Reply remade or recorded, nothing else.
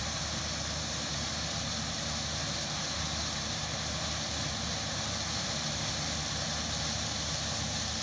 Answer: recorded